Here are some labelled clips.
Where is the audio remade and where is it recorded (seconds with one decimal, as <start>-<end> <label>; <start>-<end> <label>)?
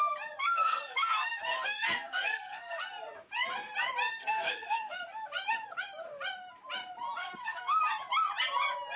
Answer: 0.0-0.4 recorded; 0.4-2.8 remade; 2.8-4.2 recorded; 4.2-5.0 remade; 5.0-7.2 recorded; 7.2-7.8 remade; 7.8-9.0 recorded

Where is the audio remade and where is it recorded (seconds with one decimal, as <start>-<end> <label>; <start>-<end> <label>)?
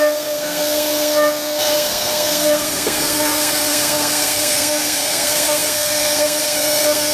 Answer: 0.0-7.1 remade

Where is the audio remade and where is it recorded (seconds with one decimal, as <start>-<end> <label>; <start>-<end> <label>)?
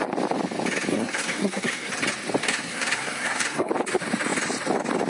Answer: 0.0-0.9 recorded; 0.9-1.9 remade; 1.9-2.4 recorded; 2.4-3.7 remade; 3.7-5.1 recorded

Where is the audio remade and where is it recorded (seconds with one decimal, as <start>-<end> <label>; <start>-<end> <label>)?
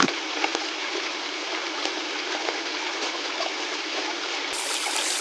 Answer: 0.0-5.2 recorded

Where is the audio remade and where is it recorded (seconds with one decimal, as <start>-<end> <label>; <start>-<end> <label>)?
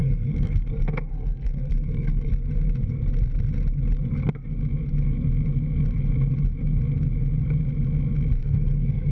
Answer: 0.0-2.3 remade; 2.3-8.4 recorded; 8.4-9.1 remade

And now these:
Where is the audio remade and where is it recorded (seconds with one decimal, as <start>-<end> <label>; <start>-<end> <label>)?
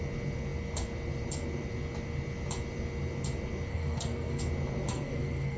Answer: 0.0-3.7 recorded; 3.7-4.4 remade; 4.4-4.9 recorded; 4.9-5.6 remade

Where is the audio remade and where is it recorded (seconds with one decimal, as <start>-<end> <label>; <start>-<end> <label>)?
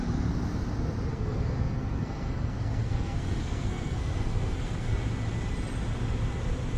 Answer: 0.0-1.1 recorded; 1.1-4.9 remade; 4.9-6.8 recorded